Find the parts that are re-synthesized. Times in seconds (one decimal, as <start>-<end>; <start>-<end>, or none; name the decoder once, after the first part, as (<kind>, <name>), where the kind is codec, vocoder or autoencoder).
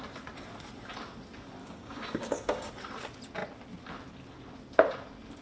1.6-2.7 (codec, DAC)